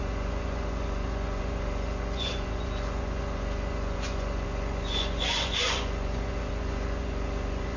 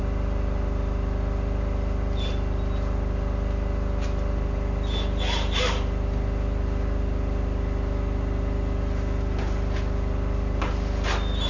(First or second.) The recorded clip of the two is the second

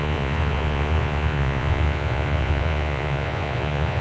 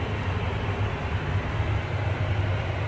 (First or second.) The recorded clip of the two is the second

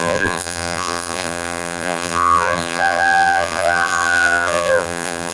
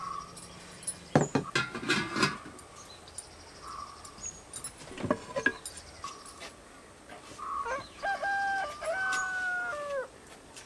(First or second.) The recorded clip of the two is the second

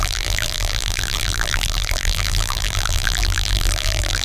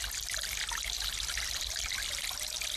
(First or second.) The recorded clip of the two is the second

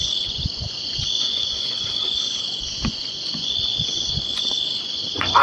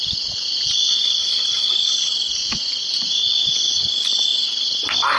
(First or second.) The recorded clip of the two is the second